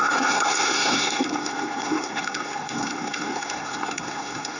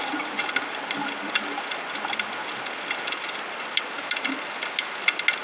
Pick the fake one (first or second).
first